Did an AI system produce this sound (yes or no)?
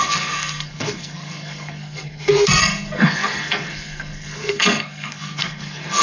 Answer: yes